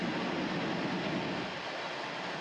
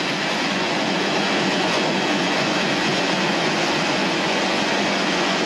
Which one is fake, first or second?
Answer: second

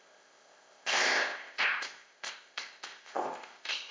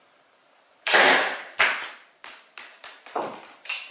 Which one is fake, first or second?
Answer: first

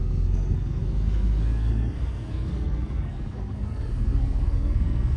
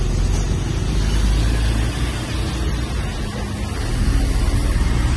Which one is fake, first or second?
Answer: first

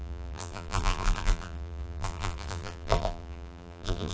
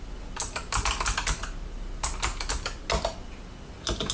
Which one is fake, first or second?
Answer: first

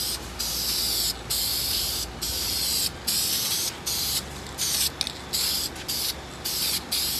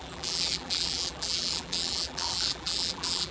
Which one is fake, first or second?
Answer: second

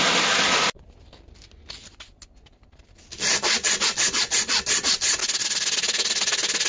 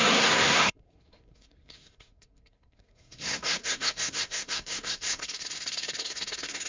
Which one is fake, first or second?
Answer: second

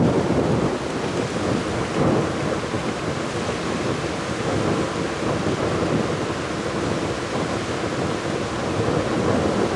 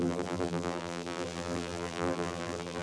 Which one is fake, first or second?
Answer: second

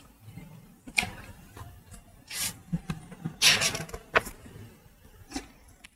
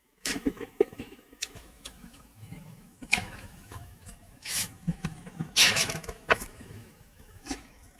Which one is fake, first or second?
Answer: second